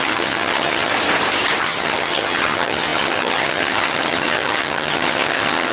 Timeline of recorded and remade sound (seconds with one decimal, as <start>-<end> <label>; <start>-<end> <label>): 0.0-0.9 remade; 0.9-1.6 recorded; 1.6-5.7 remade